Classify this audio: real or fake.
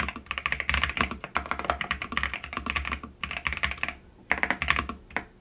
real